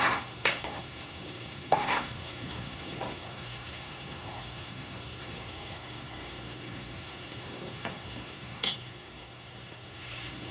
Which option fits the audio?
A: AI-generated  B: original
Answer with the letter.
A